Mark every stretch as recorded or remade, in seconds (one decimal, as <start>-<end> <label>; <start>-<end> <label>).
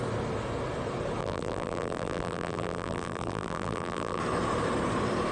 0.0-1.2 recorded; 1.2-4.2 remade; 4.2-5.3 recorded